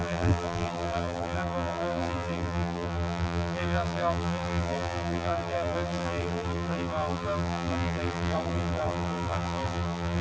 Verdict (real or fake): fake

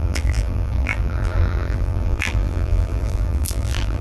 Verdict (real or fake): fake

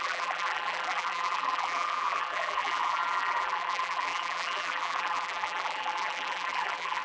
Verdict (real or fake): fake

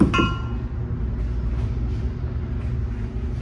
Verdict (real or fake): real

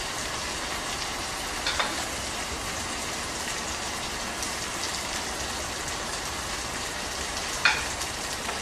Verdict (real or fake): fake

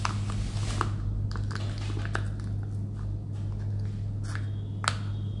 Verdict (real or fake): real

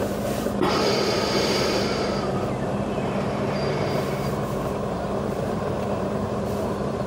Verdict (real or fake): fake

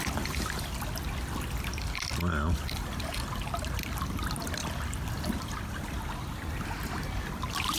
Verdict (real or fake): real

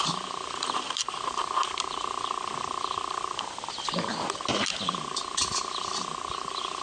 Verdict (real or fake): fake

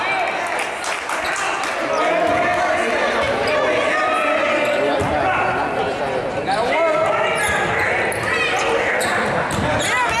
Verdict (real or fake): real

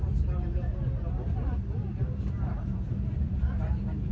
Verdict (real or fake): fake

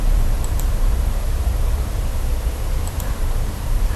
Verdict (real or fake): fake